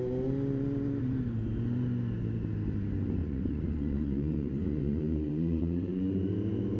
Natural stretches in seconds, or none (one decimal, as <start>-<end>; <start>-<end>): 0.0-3.2; 6.3-6.8